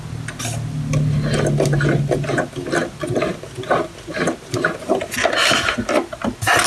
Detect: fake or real real